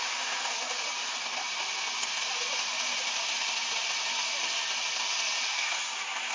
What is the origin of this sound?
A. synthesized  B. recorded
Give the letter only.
B